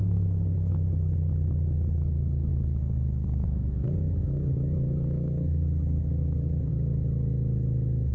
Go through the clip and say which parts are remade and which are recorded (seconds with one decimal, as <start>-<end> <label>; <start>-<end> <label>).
0.0-0.7 remade; 0.7-2.5 recorded; 2.5-6.7 remade; 6.7-8.1 recorded